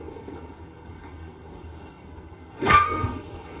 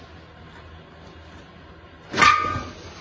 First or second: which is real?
second